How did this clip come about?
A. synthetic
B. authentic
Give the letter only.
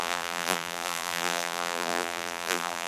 A